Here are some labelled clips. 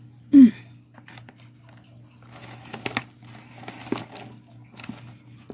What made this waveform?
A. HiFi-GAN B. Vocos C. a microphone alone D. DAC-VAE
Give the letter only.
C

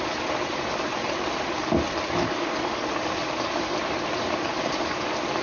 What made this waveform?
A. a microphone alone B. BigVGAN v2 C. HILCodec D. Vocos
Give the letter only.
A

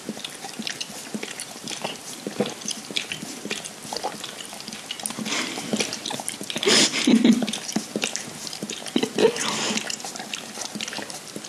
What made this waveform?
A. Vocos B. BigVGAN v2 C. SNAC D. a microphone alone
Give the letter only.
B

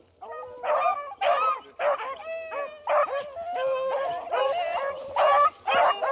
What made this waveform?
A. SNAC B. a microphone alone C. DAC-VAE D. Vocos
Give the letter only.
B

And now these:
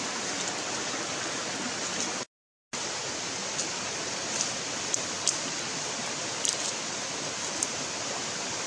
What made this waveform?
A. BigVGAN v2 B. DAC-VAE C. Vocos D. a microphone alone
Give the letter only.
D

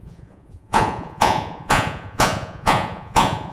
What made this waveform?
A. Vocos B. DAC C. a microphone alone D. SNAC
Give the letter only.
A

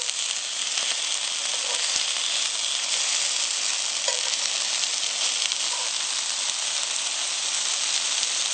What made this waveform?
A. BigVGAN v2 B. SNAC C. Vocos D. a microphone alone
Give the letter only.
D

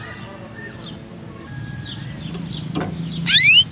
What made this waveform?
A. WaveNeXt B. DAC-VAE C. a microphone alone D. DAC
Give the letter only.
C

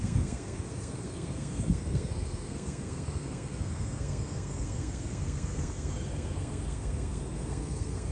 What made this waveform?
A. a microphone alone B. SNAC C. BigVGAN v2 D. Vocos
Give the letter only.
B